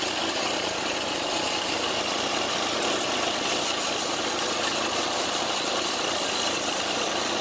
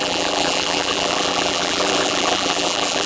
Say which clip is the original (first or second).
first